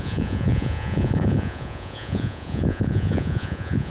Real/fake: fake